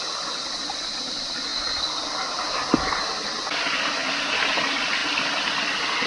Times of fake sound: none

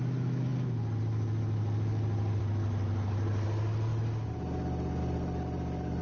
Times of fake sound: none

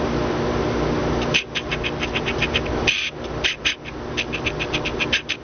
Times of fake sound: none

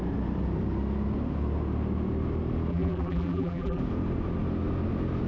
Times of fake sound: 2.7-3.8 (vocoder, BigVGAN v2)

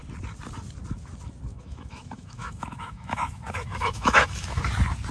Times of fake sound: 1.5-4.6 (autoencoder, DAC-VAE)

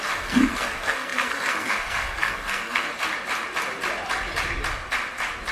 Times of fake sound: 0.0-2.9 (codec, SNAC)